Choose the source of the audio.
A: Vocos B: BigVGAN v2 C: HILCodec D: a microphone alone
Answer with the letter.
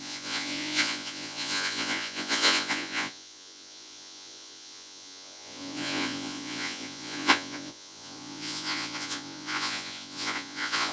A